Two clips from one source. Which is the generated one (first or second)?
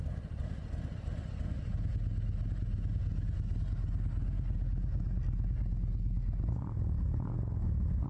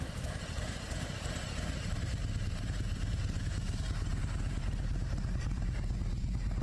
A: second